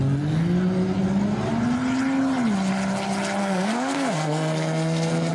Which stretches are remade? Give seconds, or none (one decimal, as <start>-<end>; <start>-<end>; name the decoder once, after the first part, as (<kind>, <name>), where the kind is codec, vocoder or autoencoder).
3.4-5.3 (codec, SNAC)